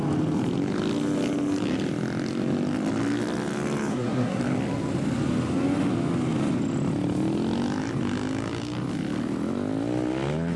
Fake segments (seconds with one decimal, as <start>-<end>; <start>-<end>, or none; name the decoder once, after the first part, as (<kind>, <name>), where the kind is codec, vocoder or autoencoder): 3.9-4.4 (codec, SNAC)